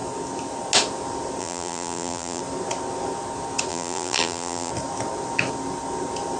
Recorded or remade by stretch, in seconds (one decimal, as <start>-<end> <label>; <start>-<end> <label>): 0.0-1.4 recorded; 1.4-2.4 remade; 2.4-3.7 recorded; 3.7-4.7 remade; 4.7-6.4 recorded